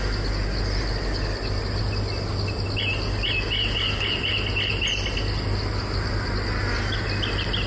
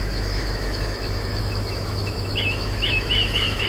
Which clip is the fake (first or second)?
second